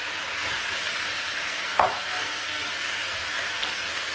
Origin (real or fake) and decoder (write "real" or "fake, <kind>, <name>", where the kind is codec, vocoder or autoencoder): fake, codec, SNAC